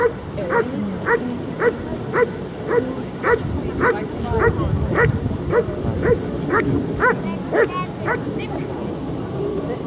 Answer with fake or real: real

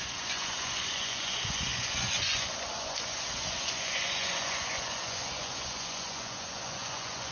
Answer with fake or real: fake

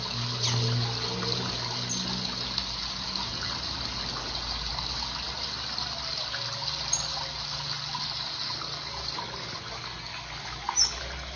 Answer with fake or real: real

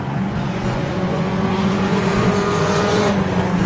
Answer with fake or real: fake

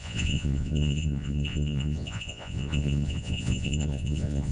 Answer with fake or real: fake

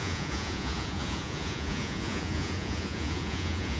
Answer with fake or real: fake